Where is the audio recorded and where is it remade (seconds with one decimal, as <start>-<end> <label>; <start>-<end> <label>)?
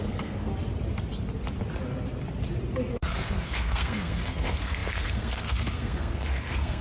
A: 0.0-0.5 remade; 0.5-2.9 recorded; 2.9-6.8 remade